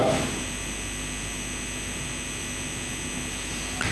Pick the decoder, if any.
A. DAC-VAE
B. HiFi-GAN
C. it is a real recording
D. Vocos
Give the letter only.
C